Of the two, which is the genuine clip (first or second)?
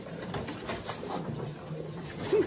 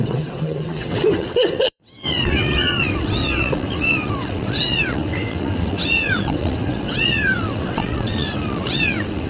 first